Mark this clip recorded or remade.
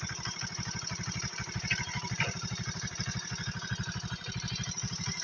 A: remade